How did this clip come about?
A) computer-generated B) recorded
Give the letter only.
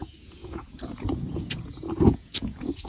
A